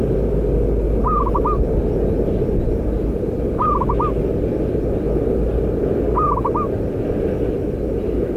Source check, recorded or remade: recorded